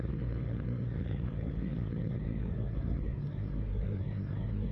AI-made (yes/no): yes